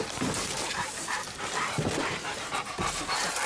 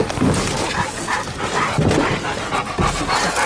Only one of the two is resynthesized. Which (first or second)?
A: first